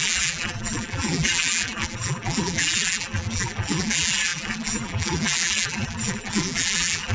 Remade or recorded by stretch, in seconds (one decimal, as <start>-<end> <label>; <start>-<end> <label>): 0.0-7.1 remade